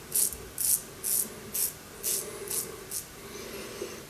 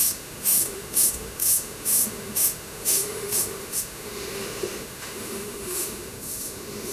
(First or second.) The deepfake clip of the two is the second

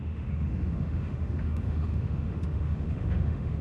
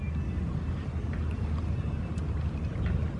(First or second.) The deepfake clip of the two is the first